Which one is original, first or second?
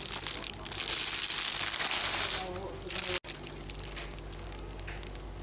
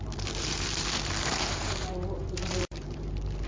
first